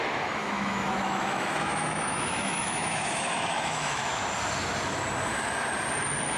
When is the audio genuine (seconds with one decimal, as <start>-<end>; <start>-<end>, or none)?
0.0-0.4; 4.2-6.4